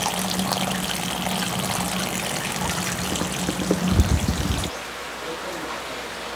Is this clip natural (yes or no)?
yes